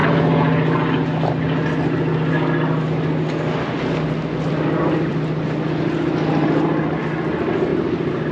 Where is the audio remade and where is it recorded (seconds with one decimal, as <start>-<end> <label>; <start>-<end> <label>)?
0.0-7.7 recorded; 7.7-8.3 remade